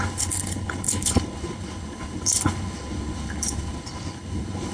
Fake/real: fake